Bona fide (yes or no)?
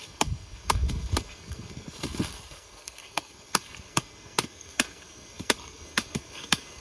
no